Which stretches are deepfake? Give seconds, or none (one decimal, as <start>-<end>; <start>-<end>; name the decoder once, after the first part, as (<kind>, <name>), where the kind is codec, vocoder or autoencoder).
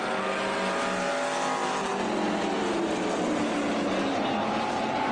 none